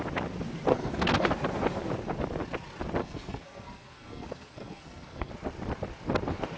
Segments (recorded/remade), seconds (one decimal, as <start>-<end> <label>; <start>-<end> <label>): 0.0-0.7 recorded; 0.7-1.3 remade; 1.3-3.0 recorded; 3.0-5.3 remade; 5.3-6.6 recorded